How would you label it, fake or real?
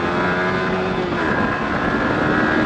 real